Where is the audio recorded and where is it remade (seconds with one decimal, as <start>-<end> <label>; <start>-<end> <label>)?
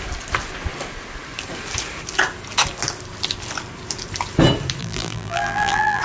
0.0-4.8 recorded; 4.8-6.0 remade